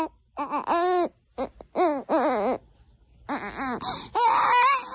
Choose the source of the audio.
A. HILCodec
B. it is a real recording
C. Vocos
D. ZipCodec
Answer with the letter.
B